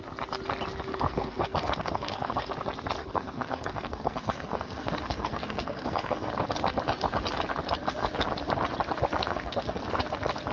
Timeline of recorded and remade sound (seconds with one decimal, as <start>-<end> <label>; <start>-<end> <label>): 0.0-0.9 recorded; 0.9-2.5 remade; 2.5-3.0 recorded; 3.0-6.3 remade; 6.3-9.3 recorded; 9.3-9.8 remade; 9.8-10.5 recorded

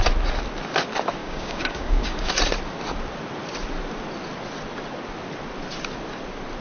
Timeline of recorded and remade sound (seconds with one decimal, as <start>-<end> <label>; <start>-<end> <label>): 0.0-1.2 recorded; 1.2-2.3 remade; 2.3-6.6 recorded

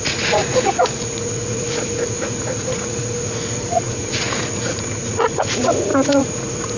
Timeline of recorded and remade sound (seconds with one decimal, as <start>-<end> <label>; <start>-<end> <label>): 0.0-6.8 remade

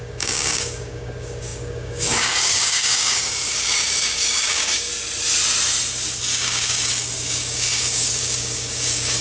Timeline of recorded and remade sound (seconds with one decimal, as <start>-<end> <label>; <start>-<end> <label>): 0.0-4.9 remade; 4.9-6.2 recorded; 6.2-9.2 remade

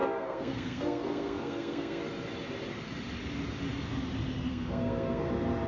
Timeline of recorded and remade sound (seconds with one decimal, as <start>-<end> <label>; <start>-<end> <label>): 0.0-2.0 remade; 2.0-4.5 recorded; 4.5-5.3 remade; 5.3-5.7 recorded